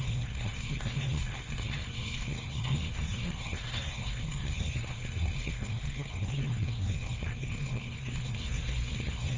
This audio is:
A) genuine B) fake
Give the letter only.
B